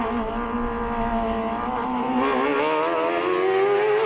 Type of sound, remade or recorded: recorded